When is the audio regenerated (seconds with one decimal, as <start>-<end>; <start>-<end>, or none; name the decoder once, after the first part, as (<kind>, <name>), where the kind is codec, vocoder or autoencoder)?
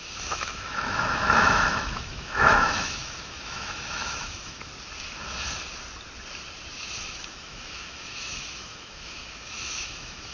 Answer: 0.0-4.7 (autoencoder, DAC-VAE); 7.3-10.3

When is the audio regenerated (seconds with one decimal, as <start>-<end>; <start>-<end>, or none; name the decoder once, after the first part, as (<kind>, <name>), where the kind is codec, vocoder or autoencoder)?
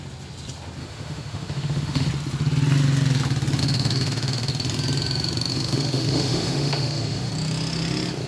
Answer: 0.8-2.1 (autoencoder, DAC-VAE); 3.6-4.5; 5.5-7.3